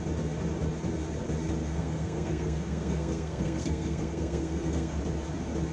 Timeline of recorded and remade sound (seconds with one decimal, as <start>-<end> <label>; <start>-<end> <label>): 0.0-1.6 recorded; 1.6-5.0 remade; 5.0-5.7 recorded